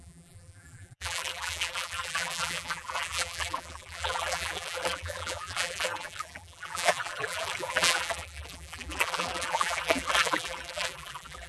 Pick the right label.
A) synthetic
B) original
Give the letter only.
A